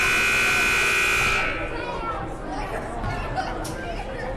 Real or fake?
real